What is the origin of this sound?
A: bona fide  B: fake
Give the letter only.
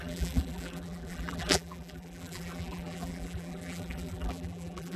B